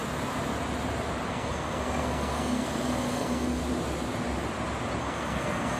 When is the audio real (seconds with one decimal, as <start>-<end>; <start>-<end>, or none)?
0.0-1.3; 3.6-5.0